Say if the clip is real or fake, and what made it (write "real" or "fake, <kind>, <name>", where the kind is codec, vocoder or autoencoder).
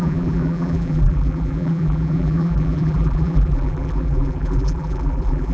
fake, vocoder, BigVGAN v2